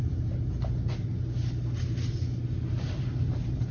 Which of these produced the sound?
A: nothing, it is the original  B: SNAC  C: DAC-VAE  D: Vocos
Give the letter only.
A